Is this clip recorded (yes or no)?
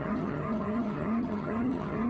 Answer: no